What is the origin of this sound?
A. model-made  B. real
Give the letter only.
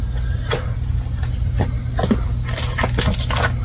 B